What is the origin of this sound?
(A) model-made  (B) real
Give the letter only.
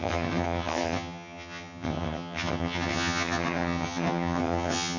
A